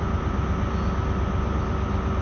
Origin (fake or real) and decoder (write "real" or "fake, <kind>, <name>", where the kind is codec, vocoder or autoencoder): real